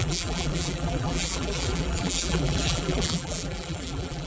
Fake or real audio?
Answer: fake